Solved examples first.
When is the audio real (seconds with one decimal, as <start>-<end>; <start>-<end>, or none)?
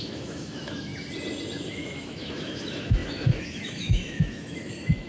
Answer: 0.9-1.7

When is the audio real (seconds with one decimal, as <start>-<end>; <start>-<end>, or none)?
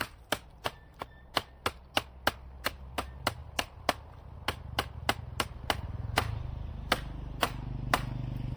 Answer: 0.0-8.6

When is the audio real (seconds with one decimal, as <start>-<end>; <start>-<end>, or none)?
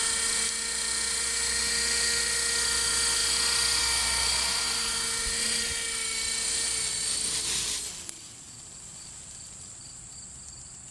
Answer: 0.0-10.9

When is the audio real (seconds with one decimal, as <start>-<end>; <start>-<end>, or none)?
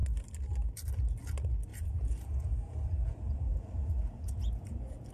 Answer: 0.0-1.7